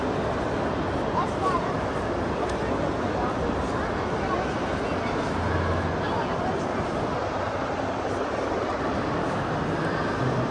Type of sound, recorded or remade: recorded